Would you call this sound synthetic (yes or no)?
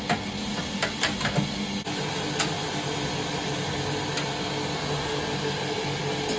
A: no